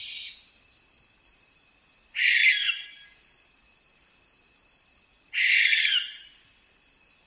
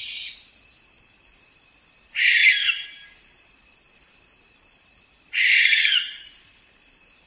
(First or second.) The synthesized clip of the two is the second